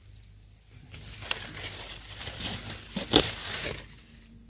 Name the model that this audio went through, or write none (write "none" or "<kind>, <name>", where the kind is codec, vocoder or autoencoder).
none